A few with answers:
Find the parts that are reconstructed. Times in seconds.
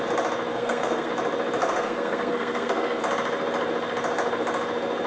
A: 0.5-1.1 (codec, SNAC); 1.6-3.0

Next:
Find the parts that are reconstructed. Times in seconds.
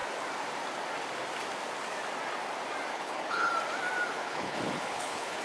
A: 2.9-3.5 (codec, HILCodec); 4.2-5.4